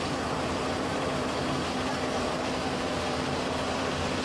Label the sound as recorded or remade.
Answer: remade